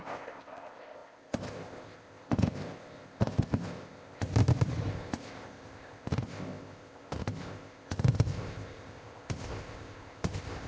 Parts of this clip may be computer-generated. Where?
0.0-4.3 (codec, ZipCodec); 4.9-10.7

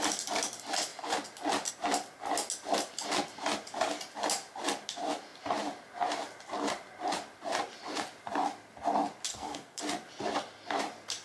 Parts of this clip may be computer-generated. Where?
9.3-9.8 (codec, SNAC)

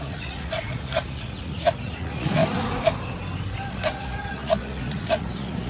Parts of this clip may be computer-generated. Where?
0.0-2.4 (vocoder, Vocos); 3.7-5.7

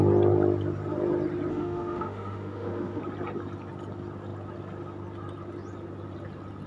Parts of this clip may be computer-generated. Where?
1.5-3.0 (autoencoder, DAC-VAE)

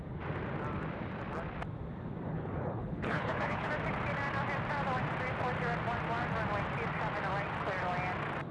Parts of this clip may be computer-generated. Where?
2.3-3.7 (codec, HILCodec)

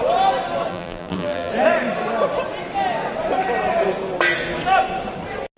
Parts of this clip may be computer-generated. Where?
0.7-1.5 (vocoder, BigVGAN v2)

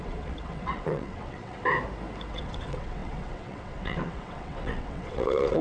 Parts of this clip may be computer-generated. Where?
0.0-1.6 (vocoder, WaveNeXt); 2.3-5.6